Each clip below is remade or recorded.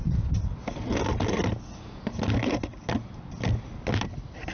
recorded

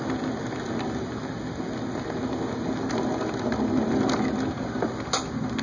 recorded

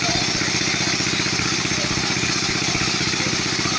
recorded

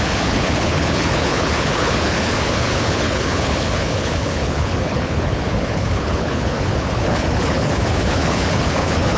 remade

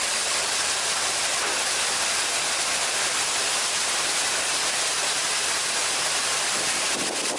recorded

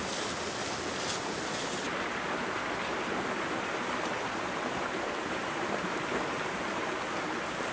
recorded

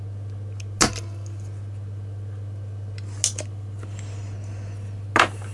recorded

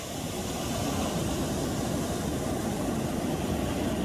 recorded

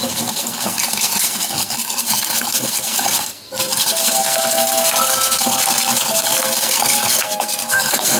remade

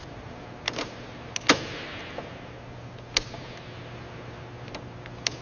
recorded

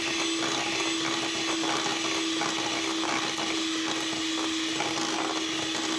recorded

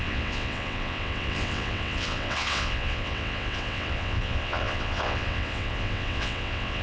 remade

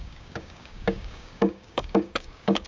remade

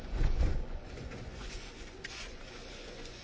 remade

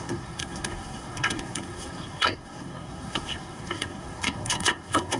remade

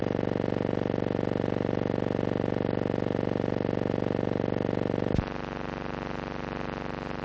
recorded